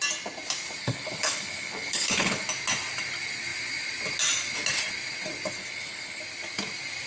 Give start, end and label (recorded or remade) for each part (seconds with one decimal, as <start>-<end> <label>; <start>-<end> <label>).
0.0-0.8 recorded; 0.8-2.4 remade; 2.4-5.6 recorded; 5.6-6.2 remade; 6.2-7.1 recorded